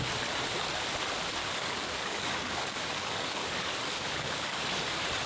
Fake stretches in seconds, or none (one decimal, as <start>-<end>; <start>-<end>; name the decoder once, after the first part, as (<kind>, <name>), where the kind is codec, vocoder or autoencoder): 1.4-4.6 (codec, DAC)